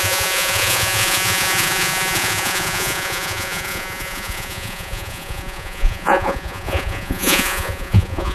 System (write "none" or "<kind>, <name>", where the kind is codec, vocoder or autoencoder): vocoder, Vocos